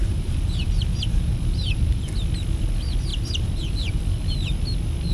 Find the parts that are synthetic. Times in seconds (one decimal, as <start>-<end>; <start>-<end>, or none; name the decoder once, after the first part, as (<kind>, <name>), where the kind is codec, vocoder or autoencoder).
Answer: 0.0-2.1 (vocoder, BigVGAN v2); 3.1-4.0